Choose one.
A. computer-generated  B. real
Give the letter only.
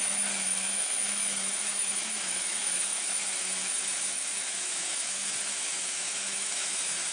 A